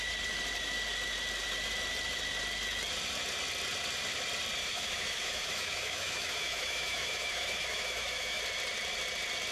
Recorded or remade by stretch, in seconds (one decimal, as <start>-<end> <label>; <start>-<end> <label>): 0.0-4.6 recorded; 4.6-8.4 remade; 8.4-9.5 recorded